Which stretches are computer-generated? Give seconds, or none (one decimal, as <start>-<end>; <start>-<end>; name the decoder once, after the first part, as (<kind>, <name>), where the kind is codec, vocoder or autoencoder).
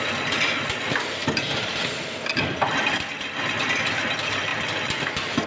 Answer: none